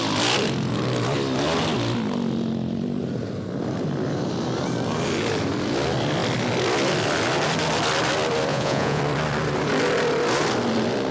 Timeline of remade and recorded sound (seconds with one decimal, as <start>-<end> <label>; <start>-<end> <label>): 0.0-8.5 recorded; 8.5-9.0 remade; 9.0-11.1 recorded